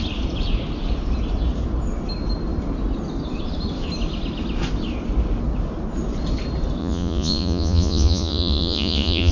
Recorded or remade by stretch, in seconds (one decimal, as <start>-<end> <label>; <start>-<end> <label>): 0.0-6.8 recorded; 6.8-9.3 remade